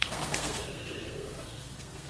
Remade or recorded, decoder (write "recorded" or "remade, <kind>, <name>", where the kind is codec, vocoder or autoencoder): remade, codec, SNAC